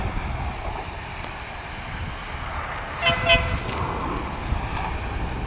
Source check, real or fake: real